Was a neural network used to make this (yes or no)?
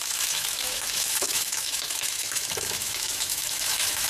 yes